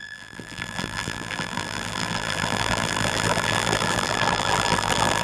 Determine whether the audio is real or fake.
fake